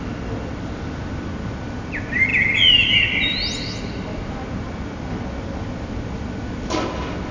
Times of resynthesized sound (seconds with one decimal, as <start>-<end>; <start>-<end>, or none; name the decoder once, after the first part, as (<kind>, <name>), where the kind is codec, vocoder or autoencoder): none